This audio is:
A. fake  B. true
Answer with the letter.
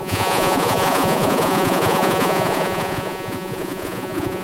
A